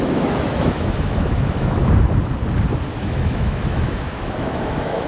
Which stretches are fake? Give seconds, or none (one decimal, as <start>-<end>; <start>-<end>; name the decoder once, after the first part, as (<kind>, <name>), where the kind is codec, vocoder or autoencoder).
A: 0.0-1.8 (autoencoder, DAC-VAE); 3.0-5.1